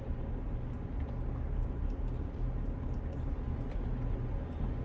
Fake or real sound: real